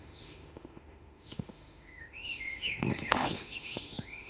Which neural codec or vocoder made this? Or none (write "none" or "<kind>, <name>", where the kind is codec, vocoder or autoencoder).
autoencoder, DAC-VAE